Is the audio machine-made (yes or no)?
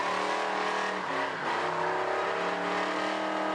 no